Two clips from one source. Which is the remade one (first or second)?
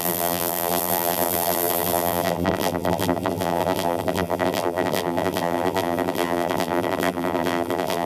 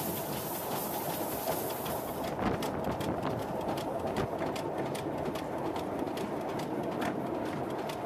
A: first